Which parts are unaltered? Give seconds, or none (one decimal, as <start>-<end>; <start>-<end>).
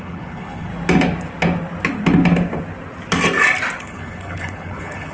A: 0.7-3.8